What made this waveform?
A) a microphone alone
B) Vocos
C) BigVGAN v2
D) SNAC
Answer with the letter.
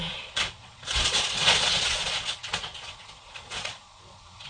B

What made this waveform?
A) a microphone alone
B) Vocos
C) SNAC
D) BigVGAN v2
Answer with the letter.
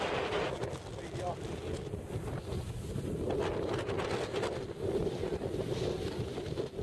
A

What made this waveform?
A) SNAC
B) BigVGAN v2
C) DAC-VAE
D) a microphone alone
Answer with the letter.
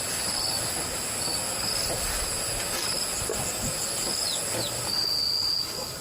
D